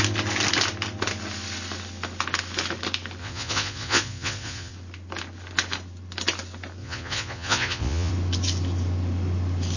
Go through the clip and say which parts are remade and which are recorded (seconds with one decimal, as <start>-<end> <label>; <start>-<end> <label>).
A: 0.0-3.2 recorded; 3.2-4.7 remade; 4.7-6.8 recorded; 6.8-8.1 remade; 8.1-9.8 recorded